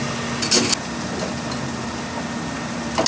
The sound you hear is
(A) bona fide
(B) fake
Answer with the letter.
A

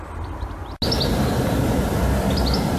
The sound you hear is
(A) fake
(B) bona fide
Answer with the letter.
B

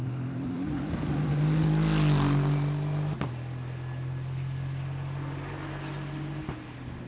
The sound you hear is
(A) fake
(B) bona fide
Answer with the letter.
B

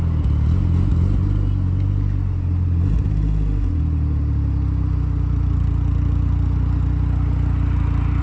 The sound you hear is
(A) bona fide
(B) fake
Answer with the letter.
A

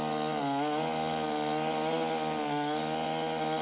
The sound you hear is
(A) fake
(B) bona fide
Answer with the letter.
B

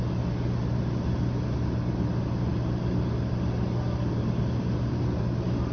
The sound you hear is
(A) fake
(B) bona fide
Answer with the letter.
B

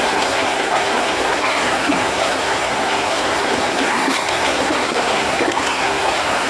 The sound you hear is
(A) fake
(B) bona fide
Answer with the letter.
A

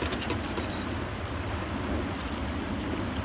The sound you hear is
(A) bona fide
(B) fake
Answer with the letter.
A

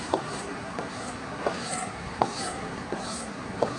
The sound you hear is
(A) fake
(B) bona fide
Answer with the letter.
A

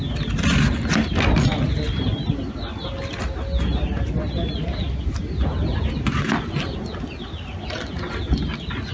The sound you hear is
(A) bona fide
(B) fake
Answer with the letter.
A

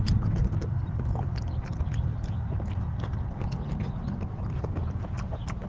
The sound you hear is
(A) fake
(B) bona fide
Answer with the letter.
B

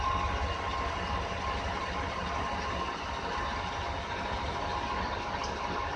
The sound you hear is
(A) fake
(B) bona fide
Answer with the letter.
B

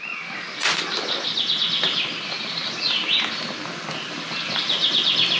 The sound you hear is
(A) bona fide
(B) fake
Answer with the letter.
A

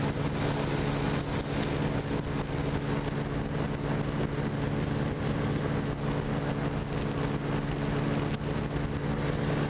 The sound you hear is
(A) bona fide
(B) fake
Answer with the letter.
A